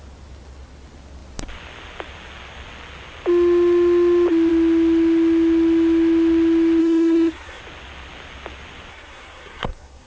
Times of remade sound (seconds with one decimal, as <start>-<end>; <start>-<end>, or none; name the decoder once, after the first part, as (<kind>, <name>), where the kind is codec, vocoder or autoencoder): 6.8-7.6 (codec, SNAC); 8.9-10.1